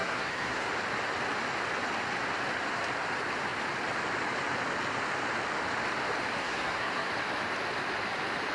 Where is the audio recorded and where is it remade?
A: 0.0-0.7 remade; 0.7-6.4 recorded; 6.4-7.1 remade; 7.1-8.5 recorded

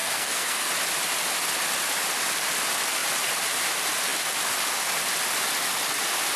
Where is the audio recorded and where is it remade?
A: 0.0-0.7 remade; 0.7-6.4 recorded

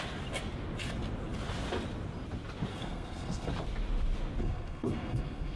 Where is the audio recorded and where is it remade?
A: 0.0-2.7 recorded; 2.7-3.5 remade; 3.5-4.4 recorded; 4.4-5.6 remade

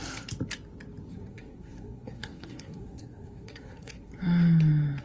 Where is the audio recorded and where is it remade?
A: 0.0-1.1 recorded; 1.1-4.1 remade; 4.1-5.0 recorded

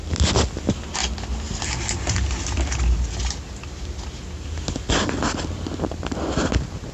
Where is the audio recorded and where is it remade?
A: 0.0-6.9 recorded